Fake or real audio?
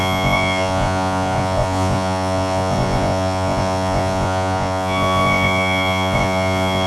fake